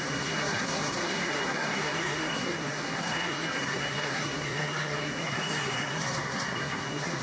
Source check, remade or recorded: remade